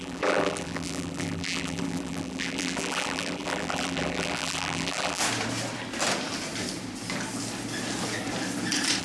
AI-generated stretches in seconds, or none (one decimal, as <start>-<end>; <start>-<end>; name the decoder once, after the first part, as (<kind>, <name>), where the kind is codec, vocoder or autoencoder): 0.0-5.2 (vocoder, BigVGAN v2)